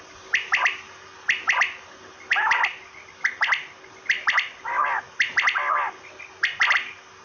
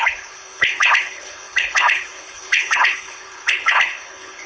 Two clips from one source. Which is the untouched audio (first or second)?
first